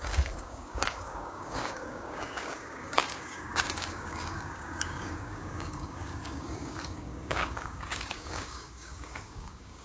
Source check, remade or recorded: remade